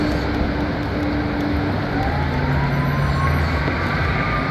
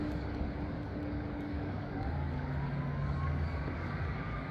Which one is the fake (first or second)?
second